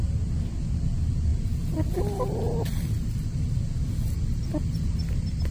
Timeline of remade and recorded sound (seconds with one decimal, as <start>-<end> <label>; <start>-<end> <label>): 0.0-1.3 recorded; 1.3-3.4 remade; 3.4-5.5 recorded